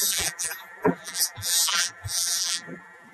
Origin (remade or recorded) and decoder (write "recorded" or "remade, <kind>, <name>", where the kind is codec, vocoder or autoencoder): remade, vocoder, BigVGAN v2